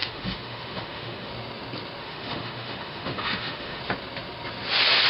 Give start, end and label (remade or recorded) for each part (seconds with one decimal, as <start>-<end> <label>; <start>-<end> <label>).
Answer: 0.0-1.3 remade; 1.3-2.0 recorded; 2.0-3.8 remade; 3.8-5.1 recorded